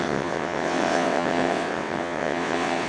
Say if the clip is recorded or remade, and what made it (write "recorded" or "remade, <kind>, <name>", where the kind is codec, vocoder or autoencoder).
remade, vocoder, WaveNeXt